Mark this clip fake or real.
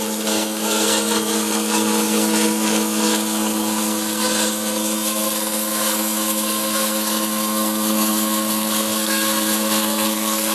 fake